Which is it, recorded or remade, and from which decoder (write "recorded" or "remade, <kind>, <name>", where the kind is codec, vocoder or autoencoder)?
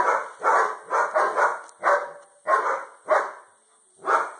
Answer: recorded